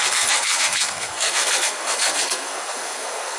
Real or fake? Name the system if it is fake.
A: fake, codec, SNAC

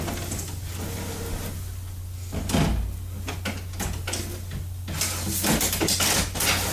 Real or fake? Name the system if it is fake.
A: real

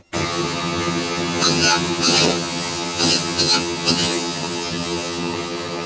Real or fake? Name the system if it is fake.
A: fake, vocoder, HiFi-GAN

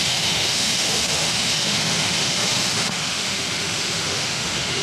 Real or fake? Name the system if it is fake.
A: fake, autoencoder, DAC-VAE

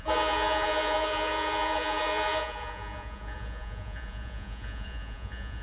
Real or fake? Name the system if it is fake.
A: fake, vocoder, Vocos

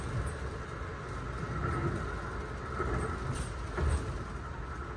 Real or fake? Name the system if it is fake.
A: real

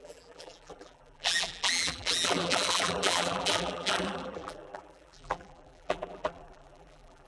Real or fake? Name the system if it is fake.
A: fake, vocoder, BigVGAN v2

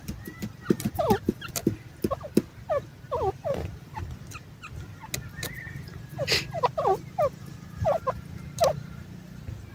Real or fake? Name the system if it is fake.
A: real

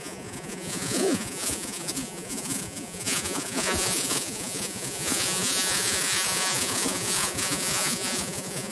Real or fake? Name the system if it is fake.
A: fake, vocoder, Vocos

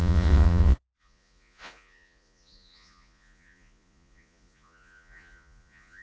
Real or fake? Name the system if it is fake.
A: fake, vocoder, Vocos